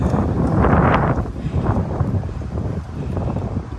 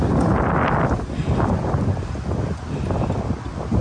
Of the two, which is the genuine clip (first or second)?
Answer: second